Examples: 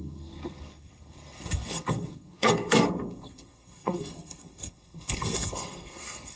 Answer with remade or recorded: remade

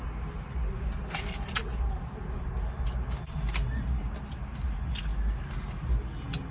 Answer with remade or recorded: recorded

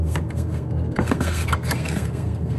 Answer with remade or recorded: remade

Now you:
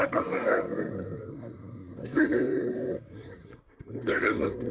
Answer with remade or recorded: remade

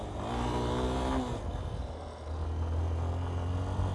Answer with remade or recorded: recorded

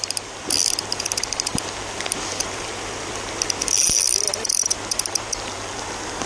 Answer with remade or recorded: recorded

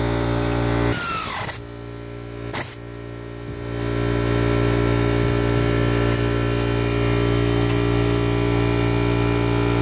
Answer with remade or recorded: recorded